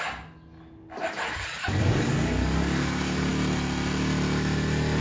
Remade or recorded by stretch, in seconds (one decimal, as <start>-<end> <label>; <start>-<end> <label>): 0.0-1.6 recorded; 1.6-3.3 remade; 3.3-5.0 recorded

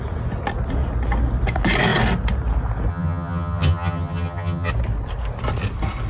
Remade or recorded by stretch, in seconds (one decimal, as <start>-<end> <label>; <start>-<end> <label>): 0.0-2.9 recorded; 2.9-4.7 remade; 4.7-6.1 recorded

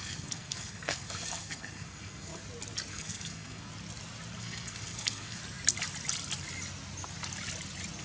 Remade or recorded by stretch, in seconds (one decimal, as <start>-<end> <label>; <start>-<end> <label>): 0.0-2.3 remade; 2.3-2.9 recorded; 2.9-3.7 remade; 3.7-4.4 recorded; 4.4-5.4 remade; 5.4-8.0 recorded

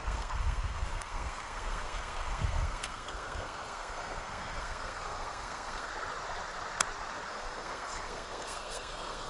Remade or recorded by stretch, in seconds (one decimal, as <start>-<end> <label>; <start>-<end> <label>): 0.0-5.9 remade; 5.9-7.3 recorded; 7.3-9.3 remade

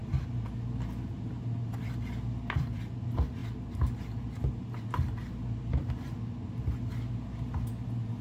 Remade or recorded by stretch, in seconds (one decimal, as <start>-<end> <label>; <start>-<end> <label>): 0.0-8.2 recorded